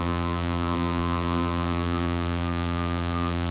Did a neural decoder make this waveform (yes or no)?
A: yes